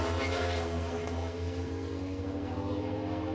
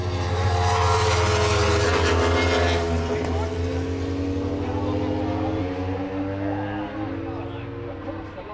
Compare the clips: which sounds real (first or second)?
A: second